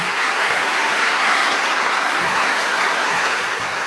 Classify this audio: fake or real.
fake